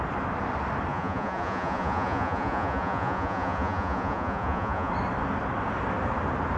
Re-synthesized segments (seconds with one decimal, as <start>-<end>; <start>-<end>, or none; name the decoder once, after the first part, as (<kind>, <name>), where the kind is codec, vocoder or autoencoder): 0.9-4.9 (vocoder, Vocos)